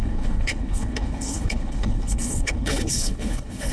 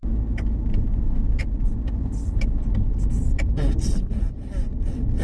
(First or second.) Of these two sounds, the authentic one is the second